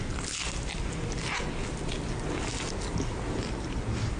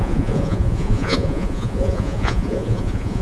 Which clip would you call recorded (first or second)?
first